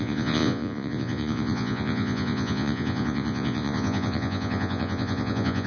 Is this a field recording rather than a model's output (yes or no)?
no